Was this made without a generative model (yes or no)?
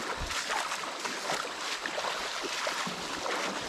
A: yes